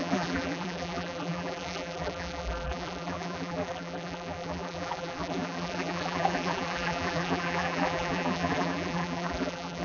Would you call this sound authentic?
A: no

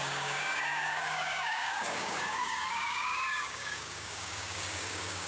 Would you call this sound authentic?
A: no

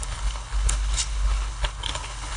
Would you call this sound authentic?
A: no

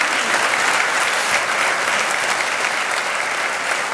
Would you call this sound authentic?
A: yes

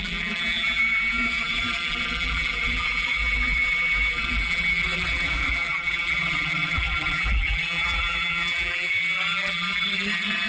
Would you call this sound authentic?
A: no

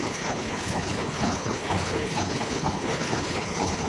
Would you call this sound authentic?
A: no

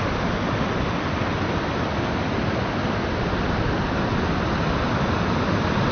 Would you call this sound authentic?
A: yes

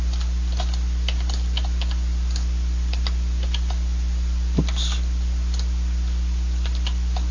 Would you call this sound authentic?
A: yes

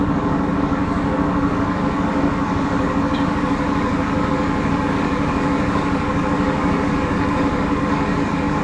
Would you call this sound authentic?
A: no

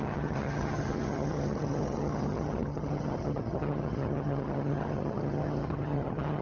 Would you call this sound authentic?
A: no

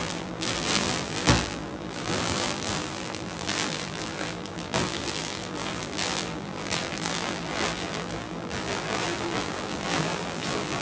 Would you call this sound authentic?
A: no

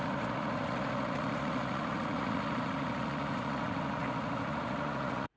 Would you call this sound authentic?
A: no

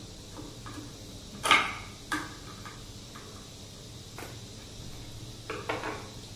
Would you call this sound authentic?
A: yes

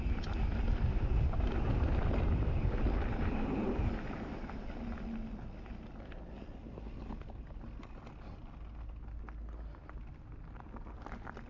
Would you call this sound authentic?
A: yes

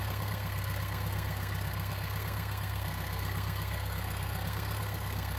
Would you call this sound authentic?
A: no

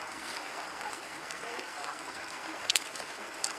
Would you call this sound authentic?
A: no